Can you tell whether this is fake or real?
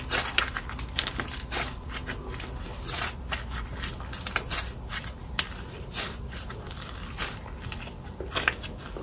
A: real